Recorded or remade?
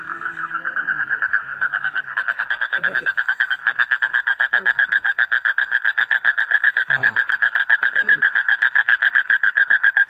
remade